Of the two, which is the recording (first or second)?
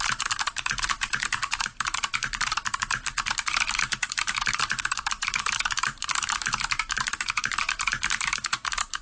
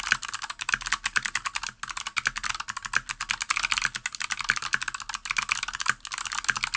second